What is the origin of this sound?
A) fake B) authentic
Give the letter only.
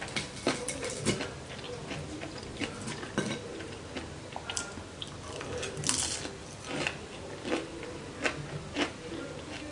B